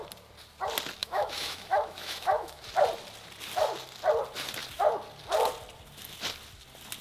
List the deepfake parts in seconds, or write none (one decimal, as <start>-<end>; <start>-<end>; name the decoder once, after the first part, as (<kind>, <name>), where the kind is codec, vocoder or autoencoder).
1.0-2.6 (autoencoder, DAC-VAE)